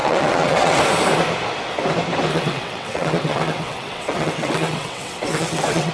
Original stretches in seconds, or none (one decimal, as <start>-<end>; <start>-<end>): 0.8-2.3